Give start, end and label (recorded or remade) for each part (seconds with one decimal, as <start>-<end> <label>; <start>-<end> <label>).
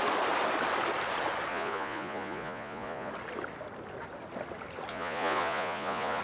0.0-1.5 recorded; 1.5-3.1 remade; 3.1-4.9 recorded; 4.9-6.2 remade